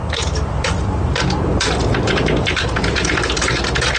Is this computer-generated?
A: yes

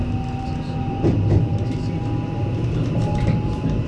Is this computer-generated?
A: no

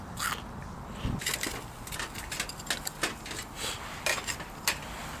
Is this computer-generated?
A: no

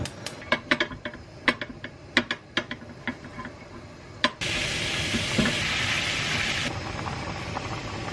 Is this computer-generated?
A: no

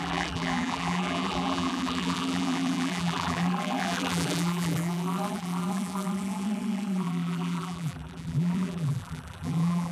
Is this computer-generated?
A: yes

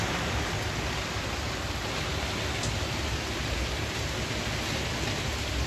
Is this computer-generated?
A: no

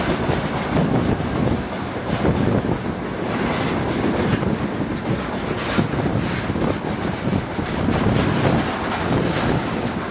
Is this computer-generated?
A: no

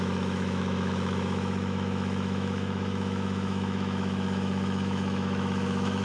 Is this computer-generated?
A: yes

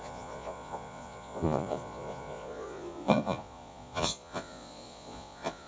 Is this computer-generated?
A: yes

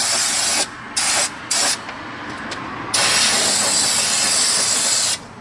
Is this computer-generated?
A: no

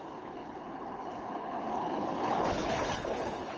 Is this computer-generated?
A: yes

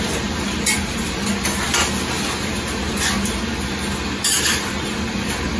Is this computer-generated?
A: no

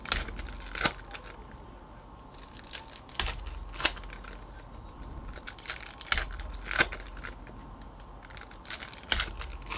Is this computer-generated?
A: no